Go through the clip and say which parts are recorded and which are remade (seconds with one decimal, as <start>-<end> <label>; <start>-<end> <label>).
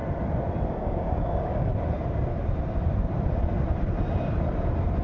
0.0-0.7 recorded; 0.7-1.7 remade; 1.7-5.0 recorded